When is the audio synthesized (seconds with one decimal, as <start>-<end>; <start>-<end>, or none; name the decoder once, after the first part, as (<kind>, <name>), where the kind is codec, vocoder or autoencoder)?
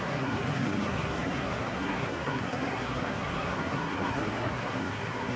0.0-5.4 (codec, SNAC)